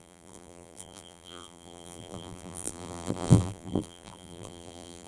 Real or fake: fake